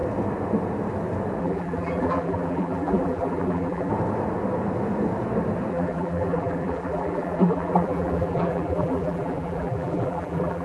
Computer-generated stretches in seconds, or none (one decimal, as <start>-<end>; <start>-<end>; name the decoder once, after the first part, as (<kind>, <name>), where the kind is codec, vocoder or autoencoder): 1.4-3.9 (vocoder, BigVGAN v2); 5.7-10.6